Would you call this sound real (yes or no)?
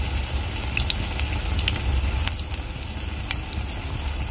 yes